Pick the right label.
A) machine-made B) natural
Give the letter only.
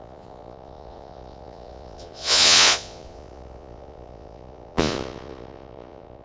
A